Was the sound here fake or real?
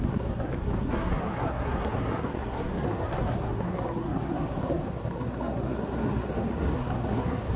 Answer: fake